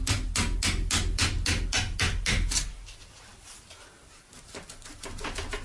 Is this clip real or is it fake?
real